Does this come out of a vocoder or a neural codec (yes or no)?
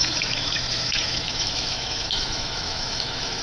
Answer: yes